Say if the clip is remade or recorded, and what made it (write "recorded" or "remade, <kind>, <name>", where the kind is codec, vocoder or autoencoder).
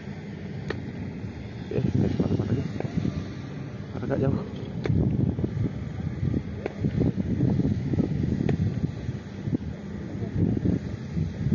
recorded